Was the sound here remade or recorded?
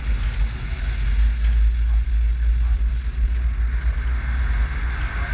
recorded